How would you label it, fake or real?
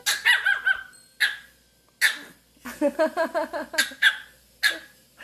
real